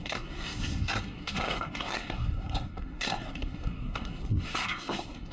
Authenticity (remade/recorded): remade